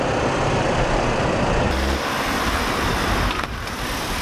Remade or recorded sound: recorded